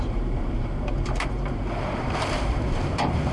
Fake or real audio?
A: fake